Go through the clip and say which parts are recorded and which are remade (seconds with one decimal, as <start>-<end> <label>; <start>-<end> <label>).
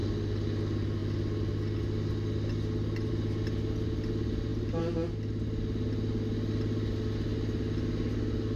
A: 0.0-8.6 recorded